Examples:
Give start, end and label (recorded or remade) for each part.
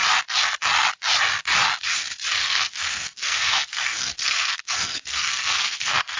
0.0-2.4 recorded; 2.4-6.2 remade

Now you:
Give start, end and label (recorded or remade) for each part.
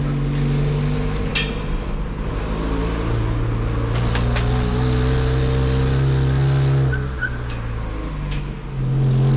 0.0-9.4 recorded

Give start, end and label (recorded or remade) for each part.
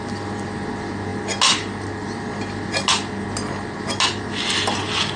0.0-5.2 recorded